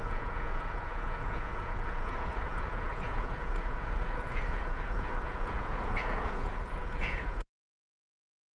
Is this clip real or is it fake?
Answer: fake